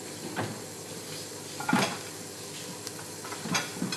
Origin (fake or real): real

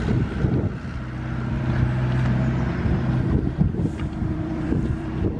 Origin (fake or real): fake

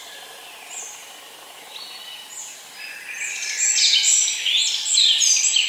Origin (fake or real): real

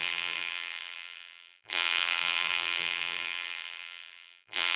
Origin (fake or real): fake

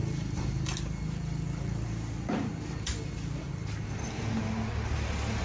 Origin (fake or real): real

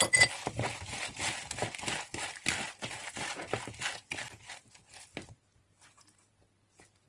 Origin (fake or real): real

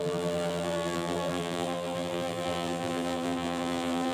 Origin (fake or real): fake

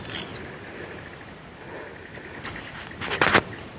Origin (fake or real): fake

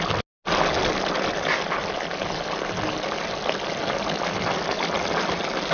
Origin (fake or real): real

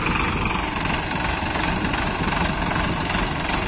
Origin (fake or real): real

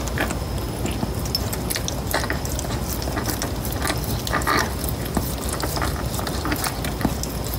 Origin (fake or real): real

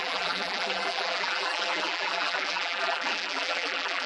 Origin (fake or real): fake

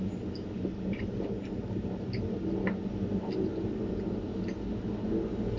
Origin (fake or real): real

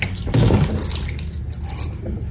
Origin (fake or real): real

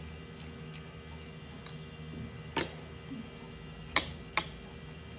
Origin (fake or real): real